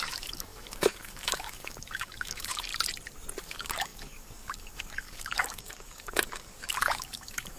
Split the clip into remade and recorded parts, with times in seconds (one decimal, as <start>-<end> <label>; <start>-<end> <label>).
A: 0.0-2.7 remade; 2.7-3.4 recorded; 3.4-7.6 remade